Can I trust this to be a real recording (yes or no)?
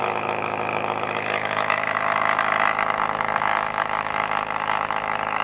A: no